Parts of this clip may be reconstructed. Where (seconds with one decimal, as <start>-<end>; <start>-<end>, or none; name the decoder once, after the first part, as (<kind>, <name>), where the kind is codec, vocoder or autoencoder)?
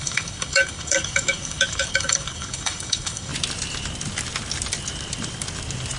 0.0-3.3 (codec, DAC)